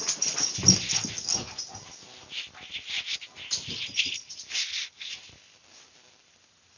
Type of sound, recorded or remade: recorded